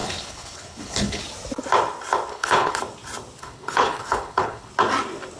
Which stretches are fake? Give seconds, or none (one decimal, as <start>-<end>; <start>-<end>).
0.0-1.2; 2.3-2.8; 3.4-4.7